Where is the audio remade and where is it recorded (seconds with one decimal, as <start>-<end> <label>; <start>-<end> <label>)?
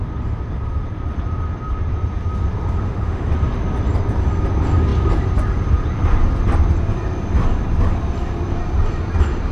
0.0-2.8 recorded; 2.8-3.3 remade; 3.3-9.5 recorded